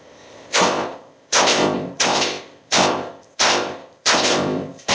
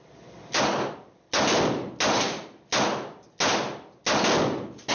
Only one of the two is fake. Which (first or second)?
first